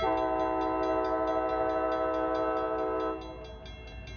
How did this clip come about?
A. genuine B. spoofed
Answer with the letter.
A